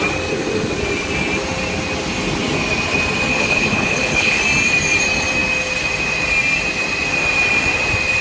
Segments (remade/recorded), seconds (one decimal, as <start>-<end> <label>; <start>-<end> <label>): 0.0-3.3 recorded; 3.3-4.4 remade; 4.4-8.2 recorded

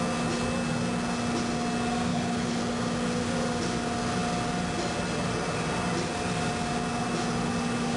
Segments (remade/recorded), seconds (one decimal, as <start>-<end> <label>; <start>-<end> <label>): 0.0-2.1 recorded; 2.1-2.6 remade; 2.6-8.0 recorded

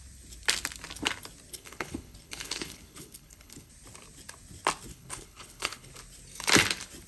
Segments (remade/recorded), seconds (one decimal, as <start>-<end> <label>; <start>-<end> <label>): 0.0-1.5 recorded; 1.5-3.7 remade; 3.7-4.9 recorded; 4.9-5.9 remade; 5.9-7.1 recorded

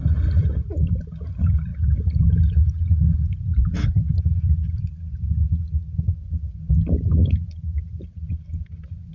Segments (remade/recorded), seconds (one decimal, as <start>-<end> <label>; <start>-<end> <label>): 0.0-9.1 recorded